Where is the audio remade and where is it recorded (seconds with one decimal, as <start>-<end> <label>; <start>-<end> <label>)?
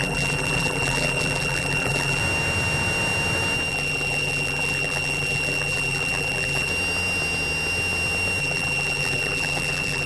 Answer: 0.0-2.2 remade; 2.2-3.7 recorded; 3.7-6.7 remade; 6.7-8.4 recorded; 8.4-10.1 remade